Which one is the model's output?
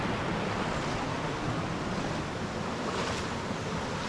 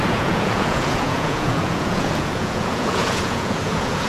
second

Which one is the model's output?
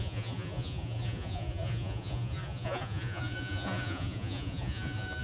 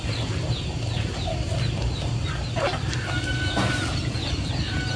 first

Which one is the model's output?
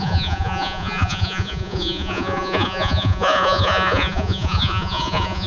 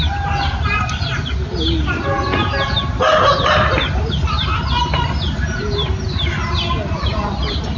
first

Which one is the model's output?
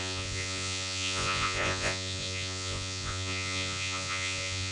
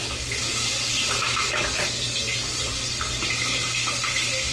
first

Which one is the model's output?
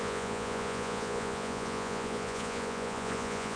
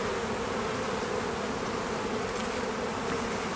first